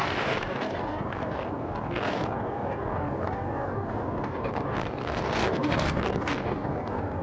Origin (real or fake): fake